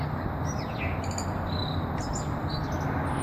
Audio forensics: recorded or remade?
recorded